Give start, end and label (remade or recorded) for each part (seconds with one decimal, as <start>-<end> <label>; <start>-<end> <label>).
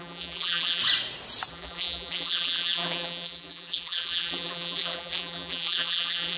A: 0.0-0.8 remade; 0.8-1.5 recorded; 1.5-6.4 remade